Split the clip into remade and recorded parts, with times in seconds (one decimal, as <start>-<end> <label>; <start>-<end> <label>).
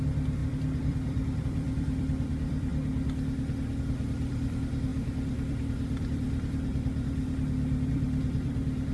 0.0-2.7 remade; 2.7-3.8 recorded; 3.8-8.9 remade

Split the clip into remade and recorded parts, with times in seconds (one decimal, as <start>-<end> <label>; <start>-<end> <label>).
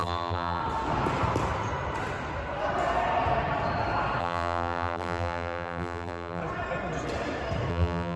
0.0-0.6 remade; 0.6-4.2 recorded; 4.2-6.4 remade; 6.4-7.7 recorded; 7.7-8.2 remade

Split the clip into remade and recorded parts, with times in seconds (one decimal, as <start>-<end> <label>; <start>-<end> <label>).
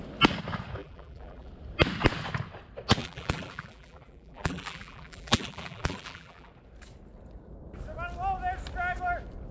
0.0-0.8 recorded; 0.8-1.5 remade; 1.5-3.0 recorded; 3.0-6.5 remade; 6.5-9.5 recorded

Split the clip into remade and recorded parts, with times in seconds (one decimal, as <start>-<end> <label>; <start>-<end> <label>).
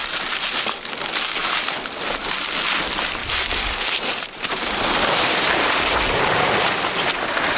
0.0-1.4 recorded; 1.4-2.2 remade; 2.2-3.2 recorded; 3.2-6.9 remade; 6.9-7.6 recorded